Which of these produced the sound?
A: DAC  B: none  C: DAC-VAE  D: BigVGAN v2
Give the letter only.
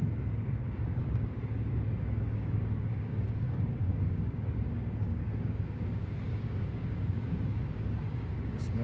A